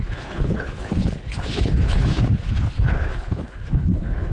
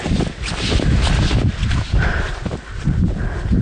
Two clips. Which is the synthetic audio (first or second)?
first